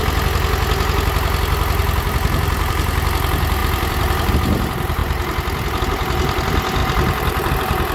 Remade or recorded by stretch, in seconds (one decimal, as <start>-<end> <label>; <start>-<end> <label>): 0.0-1.8 recorded; 1.8-3.1 remade; 3.1-3.6 recorded; 3.6-4.3 remade; 4.3-6.8 recorded; 6.8-7.5 remade; 7.5-7.9 recorded